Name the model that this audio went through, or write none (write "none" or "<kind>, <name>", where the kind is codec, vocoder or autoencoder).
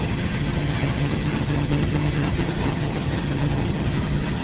vocoder, HiFi-GAN